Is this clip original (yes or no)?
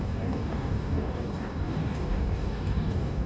no